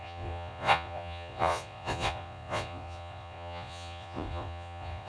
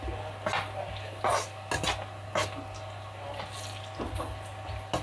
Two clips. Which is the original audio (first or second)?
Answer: second